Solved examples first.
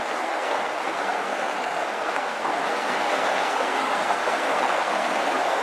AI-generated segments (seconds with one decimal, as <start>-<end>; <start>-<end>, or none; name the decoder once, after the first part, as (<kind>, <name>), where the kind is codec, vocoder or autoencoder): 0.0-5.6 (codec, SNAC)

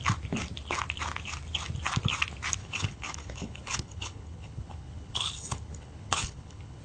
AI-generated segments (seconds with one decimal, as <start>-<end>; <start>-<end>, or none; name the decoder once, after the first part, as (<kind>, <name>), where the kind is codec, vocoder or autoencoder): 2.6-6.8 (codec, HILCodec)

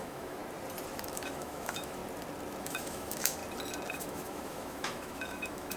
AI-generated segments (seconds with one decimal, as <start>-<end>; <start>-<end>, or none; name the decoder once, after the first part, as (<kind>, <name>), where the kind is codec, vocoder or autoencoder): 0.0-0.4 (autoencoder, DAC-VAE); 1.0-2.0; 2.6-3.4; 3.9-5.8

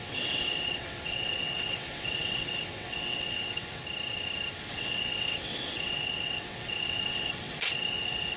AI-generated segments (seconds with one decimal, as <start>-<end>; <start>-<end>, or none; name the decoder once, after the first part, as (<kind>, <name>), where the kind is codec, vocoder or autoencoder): 0.0-3.8 (vocoder, WaveNeXt); 4.7-8.4

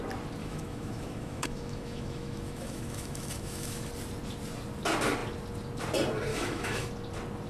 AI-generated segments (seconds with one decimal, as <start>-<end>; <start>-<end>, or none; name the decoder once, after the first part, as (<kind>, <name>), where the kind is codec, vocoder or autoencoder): 0.4-3.9 (autoencoder, DAC-VAE); 6.3-6.9